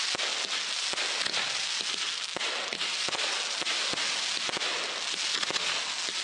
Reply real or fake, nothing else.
real